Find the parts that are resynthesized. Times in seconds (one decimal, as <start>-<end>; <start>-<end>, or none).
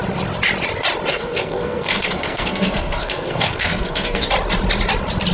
1.1-4.3